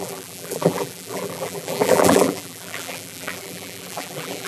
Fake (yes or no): yes